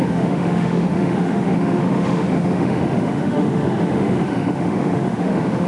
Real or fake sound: fake